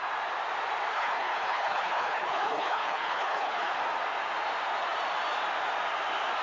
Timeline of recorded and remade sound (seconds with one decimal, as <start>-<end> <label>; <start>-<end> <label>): 0.0-0.9 recorded; 0.9-3.7 remade; 3.7-6.4 recorded